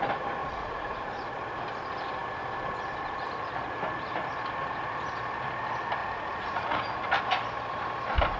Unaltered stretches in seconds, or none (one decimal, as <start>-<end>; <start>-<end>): 0.0-0.4; 1.1-6.0; 7.2-8.4